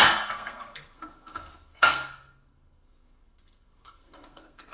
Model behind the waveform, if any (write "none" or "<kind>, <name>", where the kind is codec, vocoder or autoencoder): codec, SNAC